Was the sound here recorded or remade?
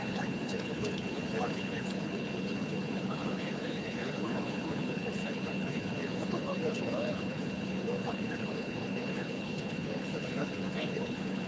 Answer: remade